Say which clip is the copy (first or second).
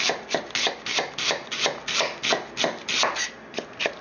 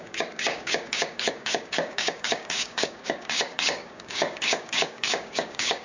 second